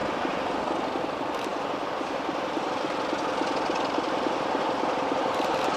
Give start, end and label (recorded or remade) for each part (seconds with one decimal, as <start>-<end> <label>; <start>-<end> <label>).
0.0-0.5 remade; 0.5-1.5 recorded; 1.5-2.8 remade; 2.8-5.8 recorded